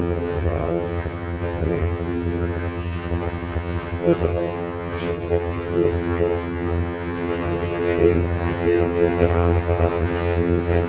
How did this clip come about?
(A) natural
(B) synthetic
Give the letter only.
B